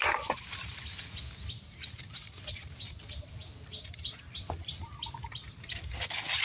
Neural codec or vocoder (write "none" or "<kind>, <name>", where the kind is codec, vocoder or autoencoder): none